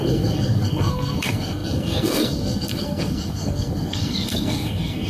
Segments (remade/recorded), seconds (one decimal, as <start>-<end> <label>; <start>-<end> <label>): 0.0-5.1 remade